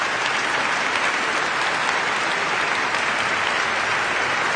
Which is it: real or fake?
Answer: real